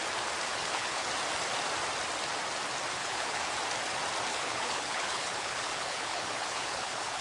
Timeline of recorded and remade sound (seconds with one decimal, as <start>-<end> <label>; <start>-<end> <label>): 0.0-0.5 recorded; 0.5-1.1 remade; 1.1-3.0 recorded; 3.0-3.5 remade; 3.5-4.3 recorded; 4.3-7.2 remade